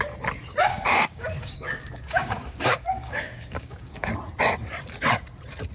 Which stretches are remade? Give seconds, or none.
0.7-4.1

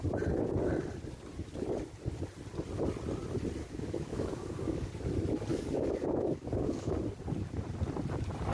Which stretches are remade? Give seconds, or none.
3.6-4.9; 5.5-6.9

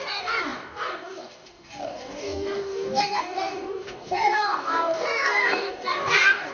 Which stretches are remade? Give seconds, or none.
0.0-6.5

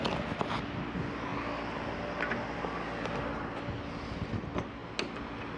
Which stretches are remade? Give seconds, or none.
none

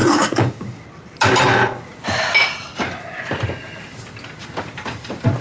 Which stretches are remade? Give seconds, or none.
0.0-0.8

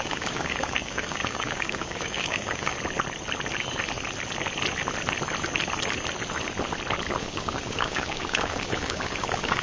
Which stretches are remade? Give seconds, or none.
0.0-2.7; 7.2-9.6

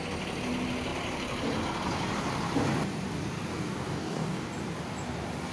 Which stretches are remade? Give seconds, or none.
3.5-4.5

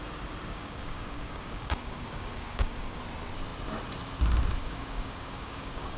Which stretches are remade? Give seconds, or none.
0.5-3.0; 4.6-6.0